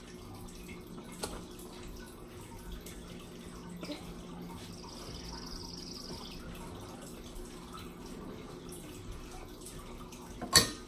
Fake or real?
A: real